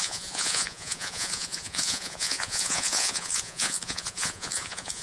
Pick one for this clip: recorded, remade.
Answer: remade